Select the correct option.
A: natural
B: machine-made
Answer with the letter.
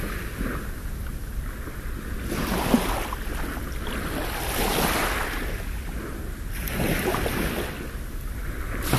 A